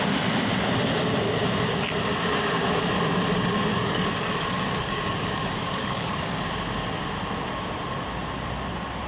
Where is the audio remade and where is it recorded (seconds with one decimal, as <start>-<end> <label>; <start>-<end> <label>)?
0.0-3.7 recorded; 3.7-6.4 remade; 6.4-9.1 recorded